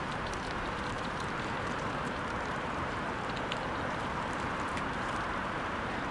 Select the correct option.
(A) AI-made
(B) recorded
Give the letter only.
A